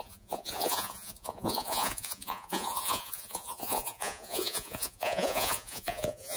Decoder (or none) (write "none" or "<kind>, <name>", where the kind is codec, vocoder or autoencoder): vocoder, Vocos